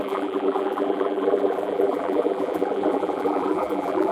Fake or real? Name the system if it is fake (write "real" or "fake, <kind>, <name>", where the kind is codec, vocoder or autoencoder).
fake, vocoder, BigVGAN v2